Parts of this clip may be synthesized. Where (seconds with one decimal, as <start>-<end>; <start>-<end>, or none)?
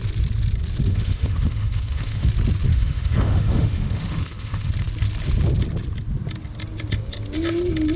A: 0.9-2.3; 2.7-4.7